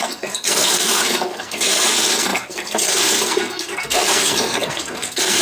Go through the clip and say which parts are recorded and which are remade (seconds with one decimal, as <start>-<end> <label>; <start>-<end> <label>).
0.0-5.4 remade